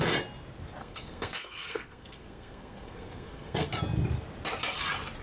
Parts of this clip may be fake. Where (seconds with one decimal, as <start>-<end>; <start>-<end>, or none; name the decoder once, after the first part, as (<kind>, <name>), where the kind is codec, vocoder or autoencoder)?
0.8-3.7 (codec, SNAC)